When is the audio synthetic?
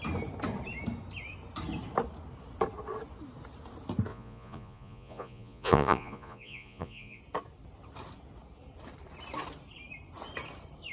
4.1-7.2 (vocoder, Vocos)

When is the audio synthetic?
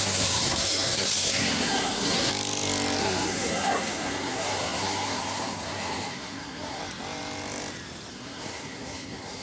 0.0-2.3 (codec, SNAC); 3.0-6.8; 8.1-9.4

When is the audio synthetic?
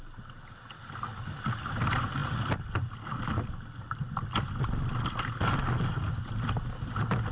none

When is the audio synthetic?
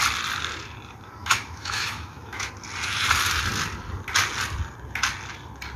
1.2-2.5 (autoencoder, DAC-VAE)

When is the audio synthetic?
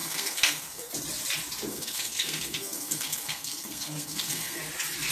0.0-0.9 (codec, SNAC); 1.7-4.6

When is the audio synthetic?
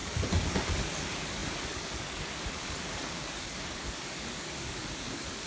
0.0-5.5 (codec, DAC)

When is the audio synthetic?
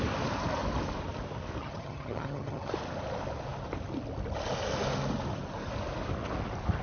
1.6-2.7 (vocoder, HiFi-GAN)